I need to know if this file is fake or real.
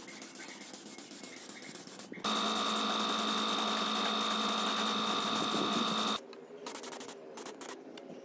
real